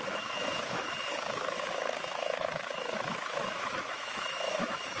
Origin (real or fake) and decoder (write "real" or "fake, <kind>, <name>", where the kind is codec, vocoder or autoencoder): fake, autoencoder, DAC-VAE